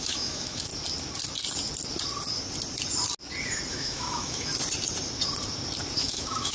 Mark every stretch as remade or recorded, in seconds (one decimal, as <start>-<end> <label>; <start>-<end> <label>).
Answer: 0.0-0.7 remade; 0.7-3.7 recorded; 3.7-4.5 remade; 4.5-6.0 recorded; 6.0-6.5 remade